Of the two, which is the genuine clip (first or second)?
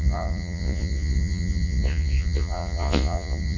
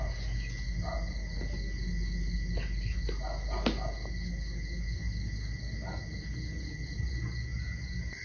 second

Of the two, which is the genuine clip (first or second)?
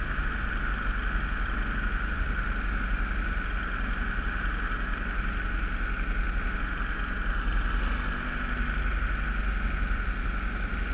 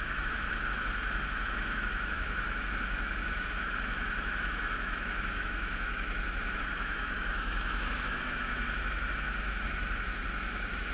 first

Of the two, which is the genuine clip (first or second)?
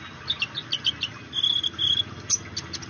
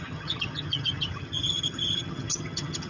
first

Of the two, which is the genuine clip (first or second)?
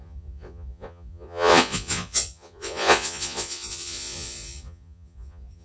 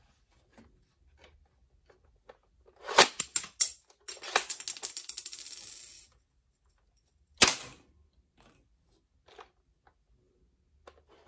second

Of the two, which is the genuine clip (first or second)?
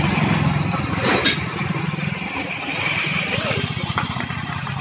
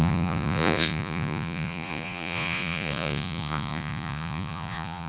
first